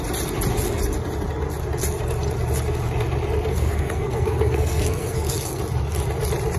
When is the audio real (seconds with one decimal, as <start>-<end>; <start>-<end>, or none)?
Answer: 0.0-3.5; 5.6-6.6